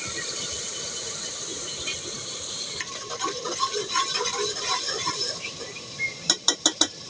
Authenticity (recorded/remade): remade